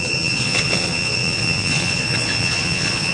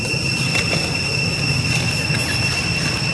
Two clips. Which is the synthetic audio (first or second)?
first